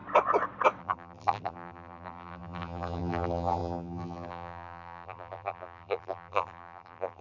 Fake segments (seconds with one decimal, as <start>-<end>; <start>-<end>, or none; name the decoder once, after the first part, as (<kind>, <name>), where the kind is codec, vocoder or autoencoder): 0.8-7.2 (vocoder, BigVGAN v2)